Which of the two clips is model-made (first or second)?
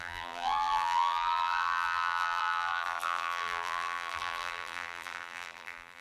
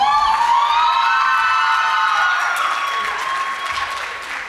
first